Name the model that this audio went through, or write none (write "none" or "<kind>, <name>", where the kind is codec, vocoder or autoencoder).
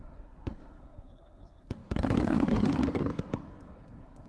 codec, SNAC